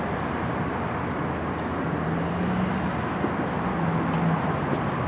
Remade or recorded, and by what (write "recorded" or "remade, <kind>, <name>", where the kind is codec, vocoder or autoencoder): recorded